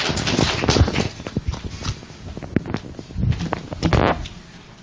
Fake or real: real